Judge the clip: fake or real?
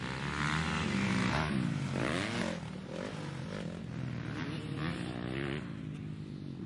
real